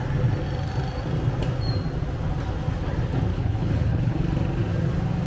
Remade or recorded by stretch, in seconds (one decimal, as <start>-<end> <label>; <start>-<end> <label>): 0.0-3.3 recorded; 3.3-4.2 remade; 4.2-5.3 recorded